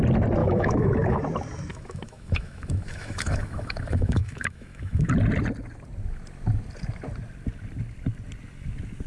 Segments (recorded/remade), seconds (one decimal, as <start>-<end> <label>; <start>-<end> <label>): 0.0-0.4 recorded; 0.4-1.2 remade; 1.2-1.7 recorded; 1.7-5.1 remade; 5.1-9.1 recorded